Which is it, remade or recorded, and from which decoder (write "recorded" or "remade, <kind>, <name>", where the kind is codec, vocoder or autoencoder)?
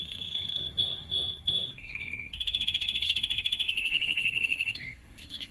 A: remade, codec, SNAC